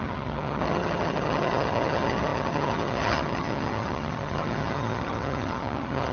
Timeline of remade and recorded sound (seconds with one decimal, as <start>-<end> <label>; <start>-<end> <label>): 0.0-6.1 remade